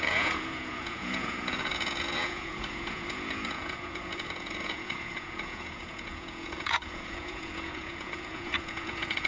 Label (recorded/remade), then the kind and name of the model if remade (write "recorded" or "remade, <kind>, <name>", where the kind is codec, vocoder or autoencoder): remade, vocoder, Vocos